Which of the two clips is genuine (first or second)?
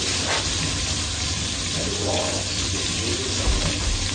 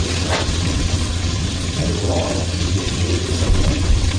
first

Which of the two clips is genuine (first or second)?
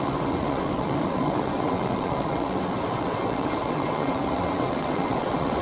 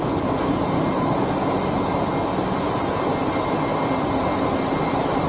second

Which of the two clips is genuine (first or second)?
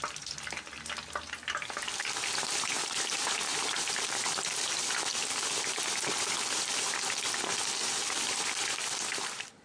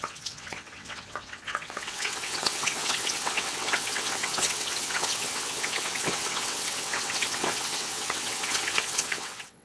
first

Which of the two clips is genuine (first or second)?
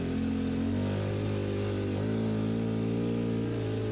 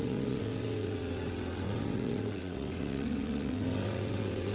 first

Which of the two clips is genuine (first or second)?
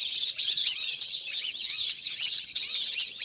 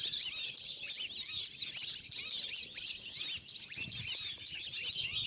second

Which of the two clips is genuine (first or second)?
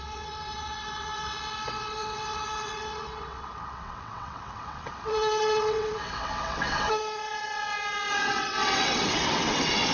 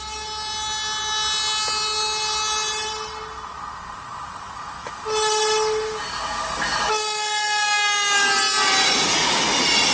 second